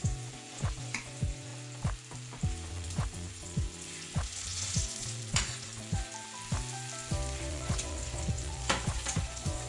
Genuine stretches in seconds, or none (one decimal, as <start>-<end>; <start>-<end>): 1.5-2.7; 6.1-7.5